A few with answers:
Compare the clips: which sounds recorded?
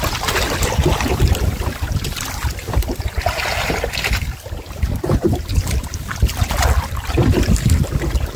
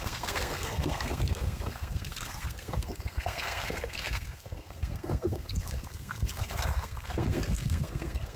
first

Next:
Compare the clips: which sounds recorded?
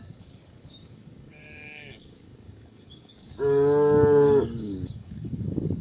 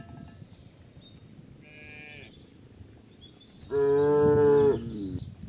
second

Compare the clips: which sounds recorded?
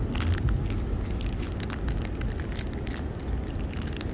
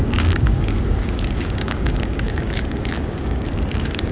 first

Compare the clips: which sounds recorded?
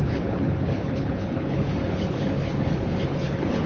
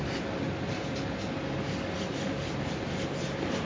second